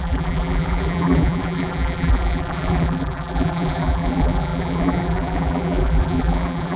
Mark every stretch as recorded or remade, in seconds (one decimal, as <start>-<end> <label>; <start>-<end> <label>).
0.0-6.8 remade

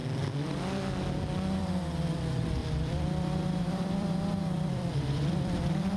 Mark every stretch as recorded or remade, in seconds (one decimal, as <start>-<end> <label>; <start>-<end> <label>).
0.0-2.6 recorded; 2.6-5.6 remade; 5.6-6.0 recorded

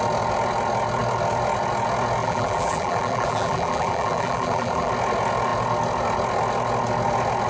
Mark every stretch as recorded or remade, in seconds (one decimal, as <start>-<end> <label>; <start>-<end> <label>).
0.0-2.2 recorded; 2.2-4.9 remade; 4.9-7.5 recorded